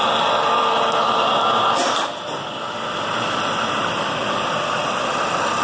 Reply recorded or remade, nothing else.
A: recorded